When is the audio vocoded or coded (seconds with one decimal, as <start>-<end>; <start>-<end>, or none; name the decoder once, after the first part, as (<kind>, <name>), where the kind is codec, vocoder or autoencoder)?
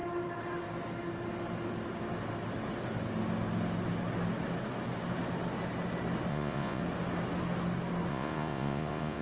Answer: 6.3-6.8 (vocoder, Vocos); 8.1-9.2